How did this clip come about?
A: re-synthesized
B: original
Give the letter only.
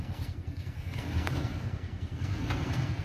A